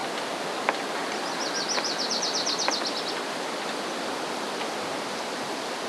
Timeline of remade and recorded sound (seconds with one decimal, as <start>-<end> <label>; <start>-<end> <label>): 0.0-5.9 recorded